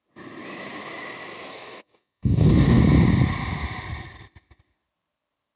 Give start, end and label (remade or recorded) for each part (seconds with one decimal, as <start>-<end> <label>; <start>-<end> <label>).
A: 0.0-1.5 recorded; 1.5-2.8 remade; 2.8-5.6 recorded